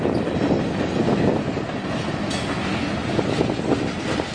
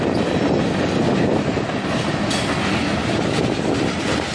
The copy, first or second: second